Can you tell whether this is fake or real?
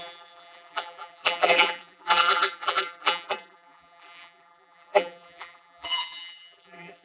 fake